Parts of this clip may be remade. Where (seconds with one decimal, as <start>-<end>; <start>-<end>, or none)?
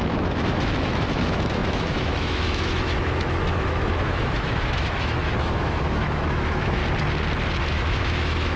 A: 0.0-6.8; 7.7-8.6